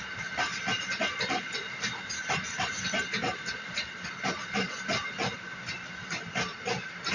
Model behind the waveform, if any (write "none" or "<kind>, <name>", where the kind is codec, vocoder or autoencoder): none